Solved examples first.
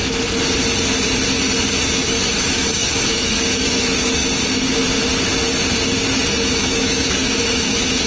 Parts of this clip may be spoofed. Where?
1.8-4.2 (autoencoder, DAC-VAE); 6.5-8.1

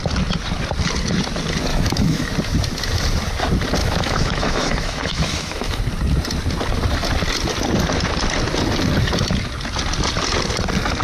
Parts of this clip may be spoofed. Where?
1.7-2.3 (autoencoder, DAC-VAE); 3.8-5.8

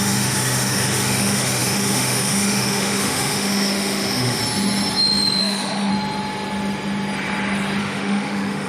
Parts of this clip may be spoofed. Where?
0.0-4.4 (autoencoder, DAC-VAE); 5.4-5.9; 7.8-8.7

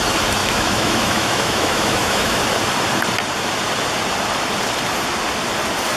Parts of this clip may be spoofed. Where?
0.4-2.4 (autoencoder, DAC-VAE)

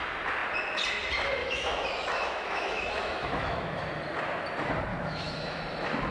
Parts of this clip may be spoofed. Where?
1.4-3.8 (autoencoder, DAC-VAE); 4.9-5.6

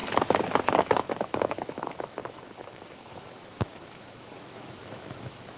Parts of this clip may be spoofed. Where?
0.8-5.6 (autoencoder, DAC-VAE)

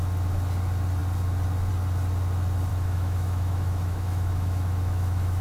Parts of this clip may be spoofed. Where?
2.7-5.4 (autoencoder, DAC-VAE)

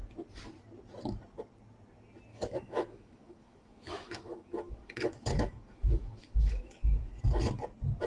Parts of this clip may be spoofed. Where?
2.3-7.2 (autoencoder, DAC-VAE)